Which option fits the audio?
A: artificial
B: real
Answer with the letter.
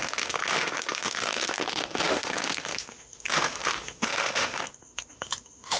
A